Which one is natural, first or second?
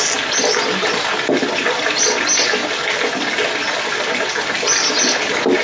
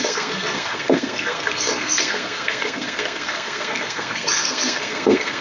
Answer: first